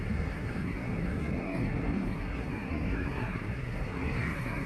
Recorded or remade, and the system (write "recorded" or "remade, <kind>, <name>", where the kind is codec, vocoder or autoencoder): remade, codec, SNAC